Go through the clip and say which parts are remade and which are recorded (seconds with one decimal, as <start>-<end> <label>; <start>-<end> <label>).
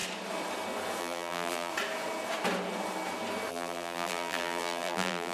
0.0-1.0 recorded; 1.0-1.7 remade; 1.7-3.5 recorded; 3.5-5.3 remade